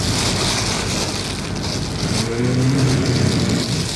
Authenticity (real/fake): real